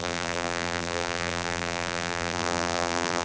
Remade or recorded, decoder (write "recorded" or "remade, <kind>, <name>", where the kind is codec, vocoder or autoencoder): remade, vocoder, BigVGAN v2